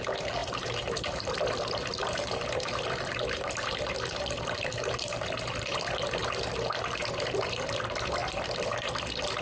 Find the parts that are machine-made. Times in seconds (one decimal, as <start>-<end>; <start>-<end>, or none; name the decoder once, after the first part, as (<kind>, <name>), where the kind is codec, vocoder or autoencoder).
0.4-3.1 (vocoder, BigVGAN v2)